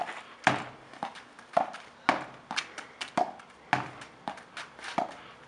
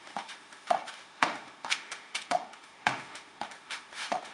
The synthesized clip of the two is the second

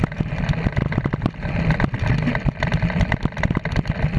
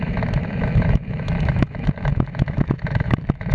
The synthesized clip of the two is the second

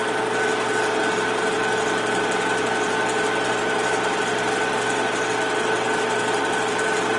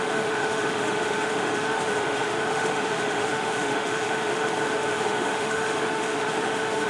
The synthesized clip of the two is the second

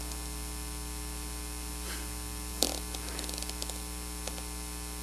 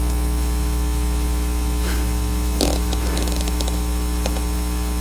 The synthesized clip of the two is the second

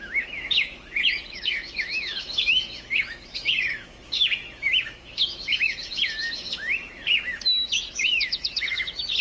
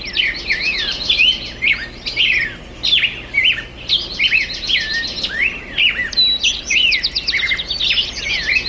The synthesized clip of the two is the first